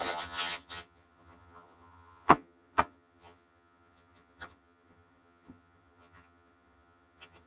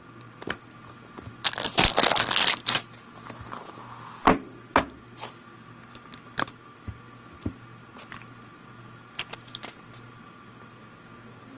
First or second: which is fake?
first